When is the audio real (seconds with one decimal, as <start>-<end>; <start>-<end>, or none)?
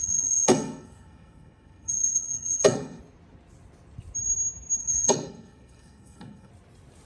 3.0-4.8; 6.5-7.1